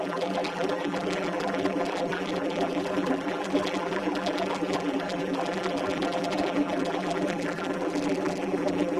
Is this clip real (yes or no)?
no